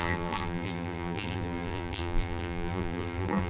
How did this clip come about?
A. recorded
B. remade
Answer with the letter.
B